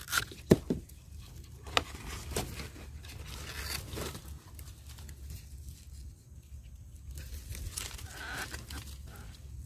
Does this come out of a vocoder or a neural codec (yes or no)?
no